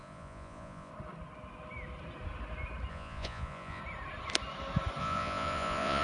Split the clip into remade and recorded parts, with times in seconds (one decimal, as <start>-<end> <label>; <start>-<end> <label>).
0.0-0.9 remade; 0.9-2.9 recorded; 2.9-3.8 remade; 3.8-5.0 recorded; 5.0-6.0 remade

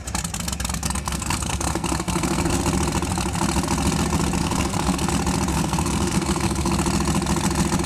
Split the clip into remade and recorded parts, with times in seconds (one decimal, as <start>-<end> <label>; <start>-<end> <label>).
0.0-0.8 recorded; 0.8-2.6 remade; 2.6-4.4 recorded; 4.4-5.1 remade; 5.1-5.5 recorded; 5.5-6.7 remade; 6.7-7.9 recorded

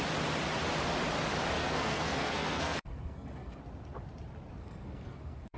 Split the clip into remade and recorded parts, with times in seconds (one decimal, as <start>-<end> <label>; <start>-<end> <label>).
0.0-1.6 recorded; 1.6-3.6 remade; 3.6-4.6 recorded; 4.6-5.6 remade

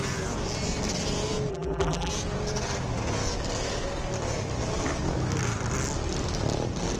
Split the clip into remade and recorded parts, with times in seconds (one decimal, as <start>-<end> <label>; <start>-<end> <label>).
0.0-1.5 recorded; 1.5-2.1 remade; 2.1-7.0 recorded

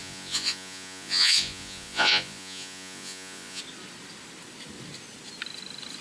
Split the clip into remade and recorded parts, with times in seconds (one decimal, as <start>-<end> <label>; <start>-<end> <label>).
0.0-3.6 remade; 3.6-6.0 recorded

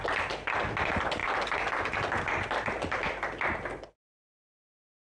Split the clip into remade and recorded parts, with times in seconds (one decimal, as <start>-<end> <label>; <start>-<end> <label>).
0.0-5.1 recorded

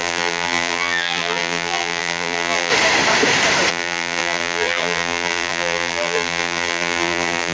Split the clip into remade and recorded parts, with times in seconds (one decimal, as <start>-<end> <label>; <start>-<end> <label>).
0.0-2.7 remade; 2.7-3.7 recorded; 3.7-7.5 remade